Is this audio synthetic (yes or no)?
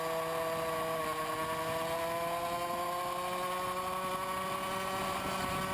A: no